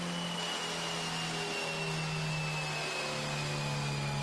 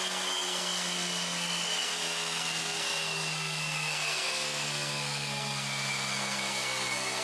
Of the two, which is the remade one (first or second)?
second